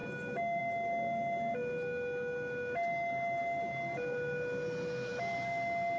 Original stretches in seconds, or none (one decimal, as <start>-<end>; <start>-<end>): 0.0-6.0